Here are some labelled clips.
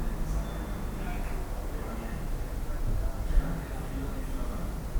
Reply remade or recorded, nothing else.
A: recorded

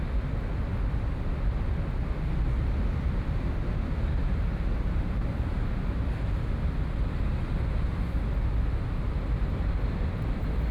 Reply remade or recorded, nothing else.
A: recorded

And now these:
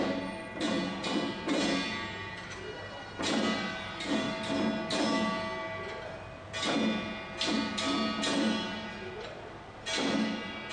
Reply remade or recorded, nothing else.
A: recorded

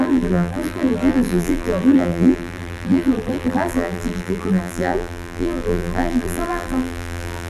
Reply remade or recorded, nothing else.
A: remade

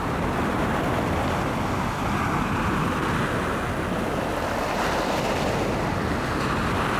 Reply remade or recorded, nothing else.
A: recorded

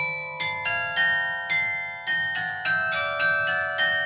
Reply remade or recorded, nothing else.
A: recorded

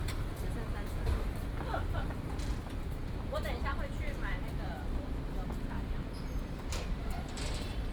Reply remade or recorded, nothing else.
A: remade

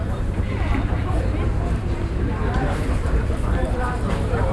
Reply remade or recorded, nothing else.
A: remade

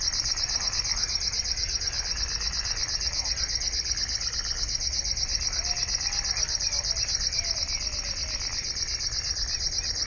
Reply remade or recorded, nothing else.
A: recorded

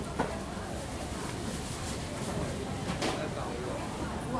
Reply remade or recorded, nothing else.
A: recorded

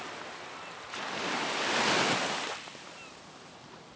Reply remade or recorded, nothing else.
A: recorded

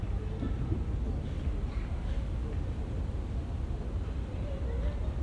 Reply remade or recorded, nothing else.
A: recorded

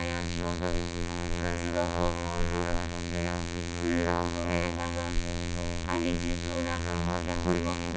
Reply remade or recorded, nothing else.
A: remade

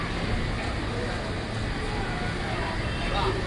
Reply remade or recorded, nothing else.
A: recorded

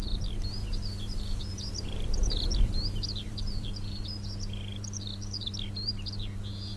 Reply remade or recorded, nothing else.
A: remade